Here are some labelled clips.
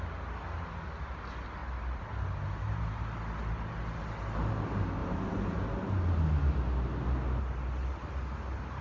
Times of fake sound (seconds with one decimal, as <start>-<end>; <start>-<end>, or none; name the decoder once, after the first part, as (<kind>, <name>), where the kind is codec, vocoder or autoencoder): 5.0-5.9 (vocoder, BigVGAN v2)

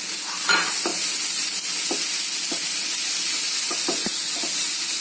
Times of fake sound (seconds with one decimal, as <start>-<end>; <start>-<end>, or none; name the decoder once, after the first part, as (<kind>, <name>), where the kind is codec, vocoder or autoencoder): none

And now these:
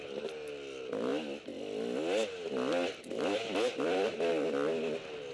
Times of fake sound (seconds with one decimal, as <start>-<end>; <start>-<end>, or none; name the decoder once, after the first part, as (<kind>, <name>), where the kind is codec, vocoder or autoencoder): none

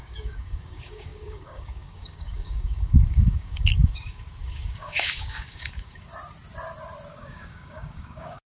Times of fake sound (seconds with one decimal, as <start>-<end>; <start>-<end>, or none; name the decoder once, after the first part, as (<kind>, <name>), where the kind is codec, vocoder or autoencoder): 0.0-6.1 (codec, DAC); 7.1-8.5

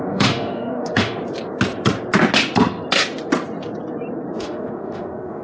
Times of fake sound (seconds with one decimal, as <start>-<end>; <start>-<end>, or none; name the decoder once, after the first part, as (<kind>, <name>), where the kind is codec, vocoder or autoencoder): 0.0-1.2 (autoencoder, DAC-VAE); 4.3-5.4